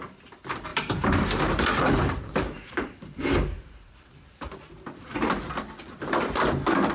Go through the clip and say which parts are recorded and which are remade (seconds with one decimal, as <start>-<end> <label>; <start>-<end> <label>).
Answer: 0.0-0.7 recorded; 0.7-4.7 remade; 4.7-6.9 recorded